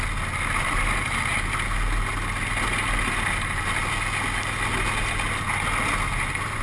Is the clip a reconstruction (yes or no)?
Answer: no